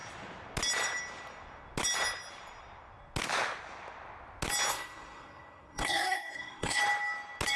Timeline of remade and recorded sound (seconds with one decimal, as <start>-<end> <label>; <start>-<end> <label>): 0.0-4.7 recorded; 4.7-6.8 remade; 6.8-7.6 recorded